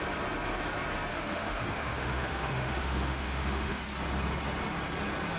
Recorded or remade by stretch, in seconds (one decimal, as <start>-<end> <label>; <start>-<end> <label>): 0.0-1.1 recorded; 1.1-3.8 remade; 3.8-5.4 recorded